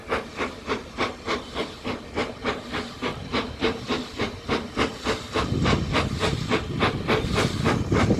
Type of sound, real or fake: real